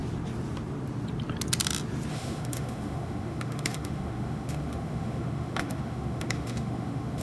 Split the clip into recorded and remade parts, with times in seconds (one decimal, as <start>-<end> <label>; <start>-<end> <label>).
0.0-2.1 recorded; 2.1-7.2 remade